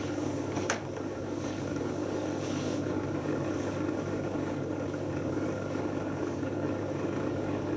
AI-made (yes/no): yes